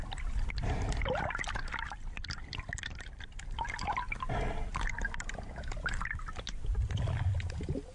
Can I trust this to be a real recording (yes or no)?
yes